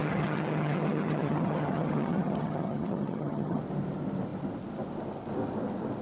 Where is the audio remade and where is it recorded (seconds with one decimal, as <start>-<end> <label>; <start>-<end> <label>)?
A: 0.0-3.6 remade; 3.6-6.0 recorded

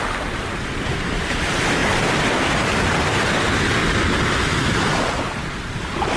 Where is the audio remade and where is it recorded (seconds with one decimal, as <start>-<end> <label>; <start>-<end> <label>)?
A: 0.0-1.8 recorded; 1.8-2.9 remade; 2.9-3.8 recorded; 3.8-6.2 remade

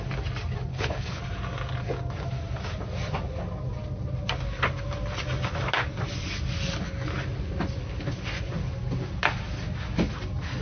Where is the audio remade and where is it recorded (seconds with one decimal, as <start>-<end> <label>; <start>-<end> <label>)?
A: 0.0-0.7 recorded; 0.7-1.2 remade; 1.2-10.6 recorded

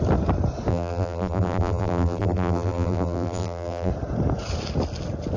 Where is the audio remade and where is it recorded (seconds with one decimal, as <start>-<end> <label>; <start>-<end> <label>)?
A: 0.0-0.7 recorded; 0.7-3.9 remade; 3.9-5.4 recorded